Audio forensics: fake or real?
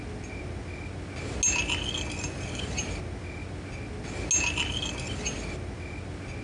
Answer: real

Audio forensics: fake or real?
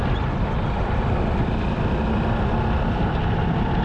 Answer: fake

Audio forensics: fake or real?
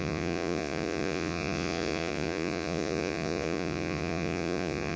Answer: fake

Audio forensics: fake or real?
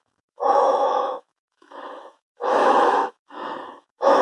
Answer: fake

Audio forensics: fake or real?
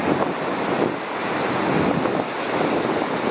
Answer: real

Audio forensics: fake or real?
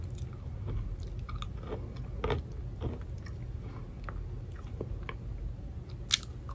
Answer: real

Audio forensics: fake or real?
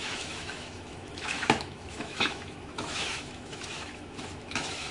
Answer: fake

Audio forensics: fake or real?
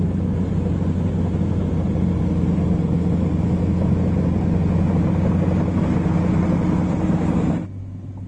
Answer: real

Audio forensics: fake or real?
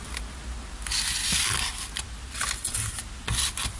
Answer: real